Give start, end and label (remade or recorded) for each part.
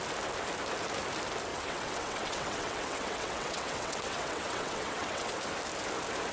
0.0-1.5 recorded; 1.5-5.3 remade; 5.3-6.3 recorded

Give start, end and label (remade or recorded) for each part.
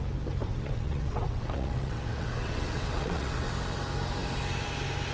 0.0-0.4 recorded; 0.4-3.5 remade; 3.5-5.1 recorded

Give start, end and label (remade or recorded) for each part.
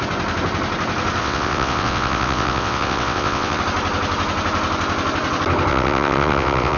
0.0-1.2 recorded; 1.2-3.6 remade; 3.6-5.7 recorded; 5.7-6.8 remade